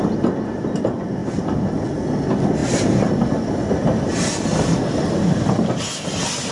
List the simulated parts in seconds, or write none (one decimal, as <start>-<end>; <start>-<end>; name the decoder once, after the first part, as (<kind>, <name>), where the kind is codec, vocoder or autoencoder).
none